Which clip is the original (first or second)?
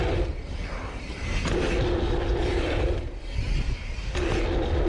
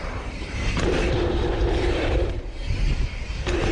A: first